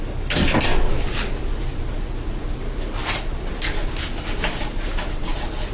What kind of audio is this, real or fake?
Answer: real